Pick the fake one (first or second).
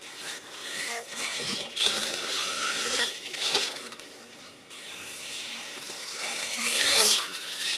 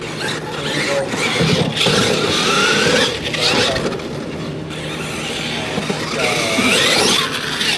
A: first